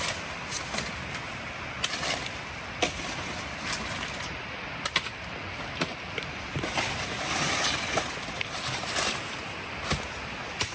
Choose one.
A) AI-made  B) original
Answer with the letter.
B